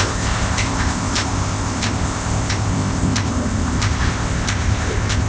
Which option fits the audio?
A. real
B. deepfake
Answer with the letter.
B